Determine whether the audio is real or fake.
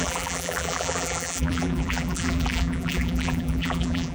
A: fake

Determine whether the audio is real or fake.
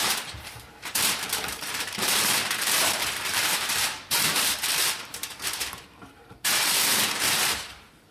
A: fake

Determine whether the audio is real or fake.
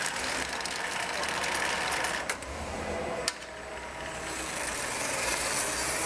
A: real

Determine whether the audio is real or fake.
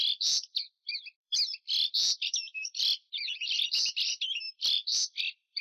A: fake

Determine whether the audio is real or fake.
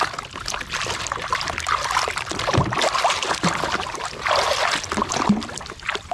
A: real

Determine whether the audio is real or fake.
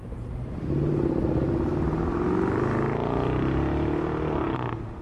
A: real